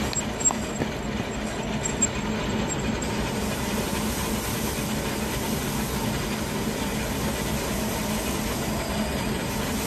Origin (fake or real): real